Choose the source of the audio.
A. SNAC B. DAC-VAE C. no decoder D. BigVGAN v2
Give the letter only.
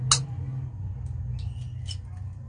C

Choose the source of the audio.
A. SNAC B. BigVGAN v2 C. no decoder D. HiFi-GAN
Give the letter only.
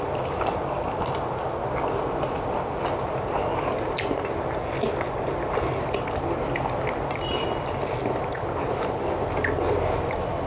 C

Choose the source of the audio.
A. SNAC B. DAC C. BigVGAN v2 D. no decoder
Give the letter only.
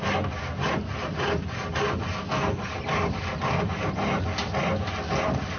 D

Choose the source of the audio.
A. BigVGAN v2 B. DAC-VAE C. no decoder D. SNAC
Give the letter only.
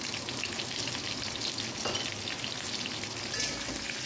C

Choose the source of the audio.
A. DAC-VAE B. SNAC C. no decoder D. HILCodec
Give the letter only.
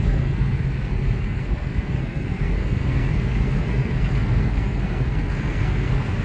B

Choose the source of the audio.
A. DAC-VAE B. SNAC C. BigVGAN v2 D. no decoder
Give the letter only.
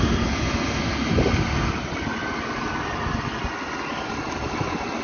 D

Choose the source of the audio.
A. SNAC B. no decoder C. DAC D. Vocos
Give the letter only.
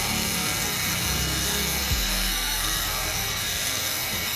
A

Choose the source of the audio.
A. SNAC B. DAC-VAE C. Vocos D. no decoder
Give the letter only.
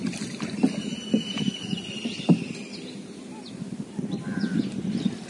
D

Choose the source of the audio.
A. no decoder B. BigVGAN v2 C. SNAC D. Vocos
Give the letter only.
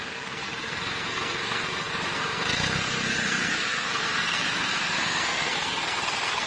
C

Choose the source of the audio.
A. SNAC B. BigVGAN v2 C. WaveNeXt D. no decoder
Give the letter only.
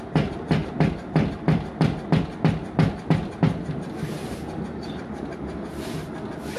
D